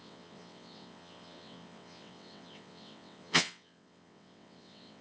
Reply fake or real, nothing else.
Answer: fake